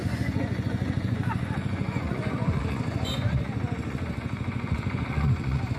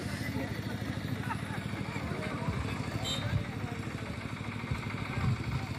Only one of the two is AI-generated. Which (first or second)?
first